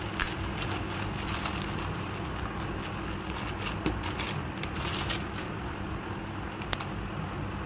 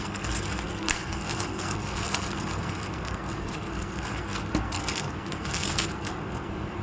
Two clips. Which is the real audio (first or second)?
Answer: first